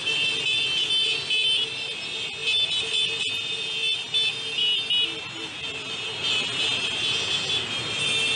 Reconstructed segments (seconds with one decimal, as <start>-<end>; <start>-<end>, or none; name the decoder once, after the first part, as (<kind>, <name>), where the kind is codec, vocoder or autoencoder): none